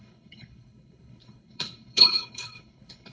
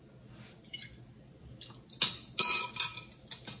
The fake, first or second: first